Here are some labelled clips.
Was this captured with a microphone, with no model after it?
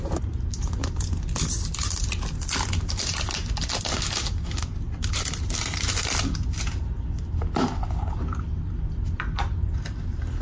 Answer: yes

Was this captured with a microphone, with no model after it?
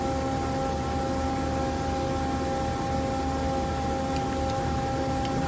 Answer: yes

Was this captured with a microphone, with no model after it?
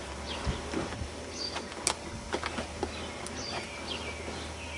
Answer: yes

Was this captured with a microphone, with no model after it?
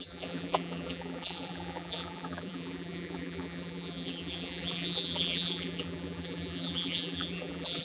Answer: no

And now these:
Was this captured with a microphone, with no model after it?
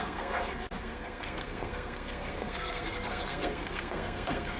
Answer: no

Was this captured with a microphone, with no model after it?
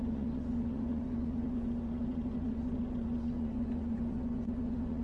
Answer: no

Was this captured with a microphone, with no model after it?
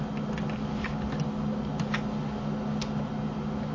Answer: yes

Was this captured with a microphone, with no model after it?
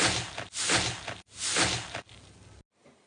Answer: yes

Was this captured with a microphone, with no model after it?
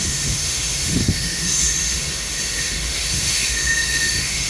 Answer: no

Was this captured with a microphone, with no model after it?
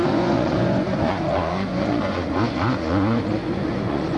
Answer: no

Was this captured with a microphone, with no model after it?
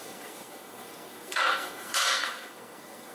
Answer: no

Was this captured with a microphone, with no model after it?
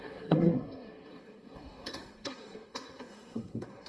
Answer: no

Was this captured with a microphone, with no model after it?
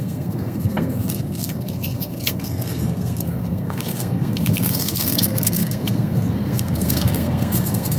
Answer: no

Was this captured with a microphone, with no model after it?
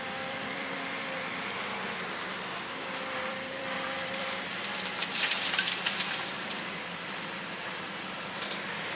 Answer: no